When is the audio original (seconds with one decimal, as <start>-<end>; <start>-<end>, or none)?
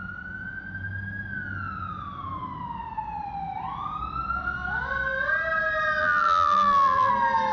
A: 0.0-6.0; 7.1-7.5